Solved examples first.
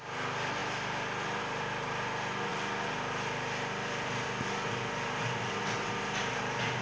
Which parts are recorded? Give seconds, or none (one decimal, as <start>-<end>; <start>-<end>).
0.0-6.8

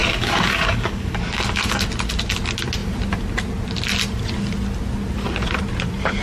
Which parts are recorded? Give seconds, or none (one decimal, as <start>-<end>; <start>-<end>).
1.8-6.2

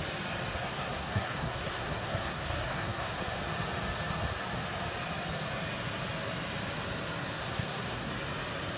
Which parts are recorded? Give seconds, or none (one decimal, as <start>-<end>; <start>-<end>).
0.0-0.7; 3.2-7.4; 8.1-8.8

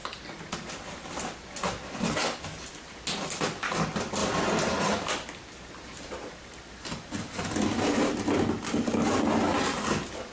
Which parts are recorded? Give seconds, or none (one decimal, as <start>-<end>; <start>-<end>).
0.0-10.3

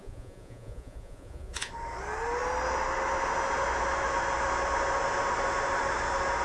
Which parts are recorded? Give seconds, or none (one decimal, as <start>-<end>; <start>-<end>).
1.7-6.4

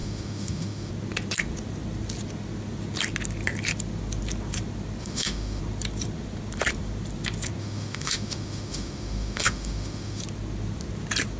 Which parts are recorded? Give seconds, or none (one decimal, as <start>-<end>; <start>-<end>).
0.9-5.0; 5.6-7.6; 10.2-11.4